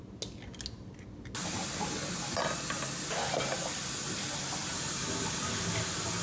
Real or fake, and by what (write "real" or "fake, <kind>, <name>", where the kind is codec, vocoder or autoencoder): real